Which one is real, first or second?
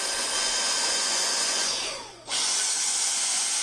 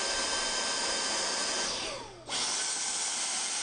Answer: second